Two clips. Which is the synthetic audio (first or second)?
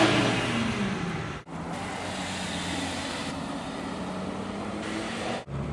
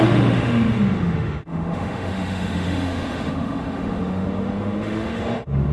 second